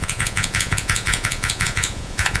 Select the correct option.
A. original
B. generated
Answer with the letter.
B